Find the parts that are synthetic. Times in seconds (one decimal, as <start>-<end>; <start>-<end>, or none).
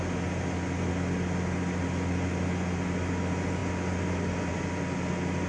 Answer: none